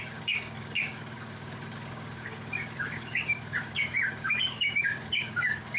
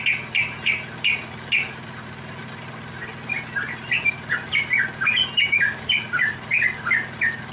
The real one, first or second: second